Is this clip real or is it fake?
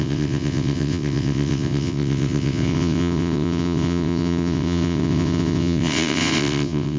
fake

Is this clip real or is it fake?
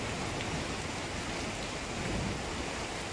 real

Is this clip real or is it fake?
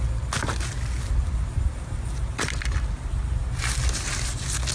real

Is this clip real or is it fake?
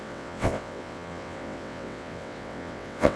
fake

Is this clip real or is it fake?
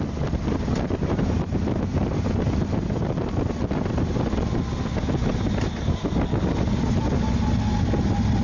real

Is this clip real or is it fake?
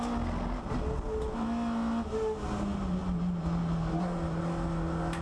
real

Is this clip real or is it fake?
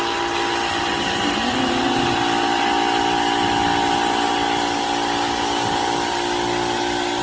real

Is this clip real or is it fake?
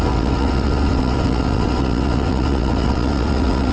fake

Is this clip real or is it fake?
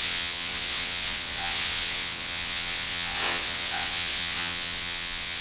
fake